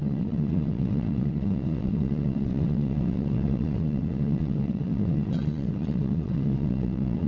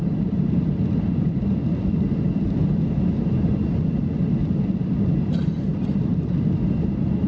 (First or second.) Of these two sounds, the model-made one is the first